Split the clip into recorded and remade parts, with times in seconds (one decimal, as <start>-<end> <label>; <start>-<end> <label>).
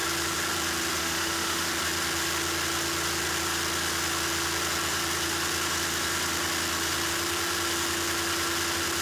0.0-1.0 recorded; 1.0-1.7 remade; 1.7-9.0 recorded